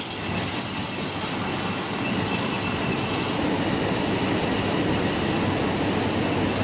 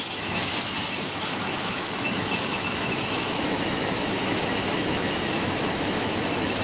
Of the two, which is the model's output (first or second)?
second